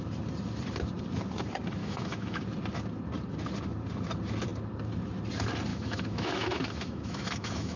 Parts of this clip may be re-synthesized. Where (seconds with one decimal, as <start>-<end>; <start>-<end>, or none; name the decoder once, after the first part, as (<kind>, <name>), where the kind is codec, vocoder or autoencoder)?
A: 1.8-2.4 (autoencoder, DAC-VAE); 5.7-7.8